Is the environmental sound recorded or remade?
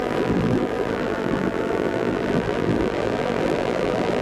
remade